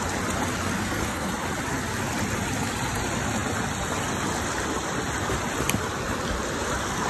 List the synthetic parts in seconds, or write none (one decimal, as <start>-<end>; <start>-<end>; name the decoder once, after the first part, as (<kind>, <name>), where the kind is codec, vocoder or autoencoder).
0.8-1.3 (codec, SNAC)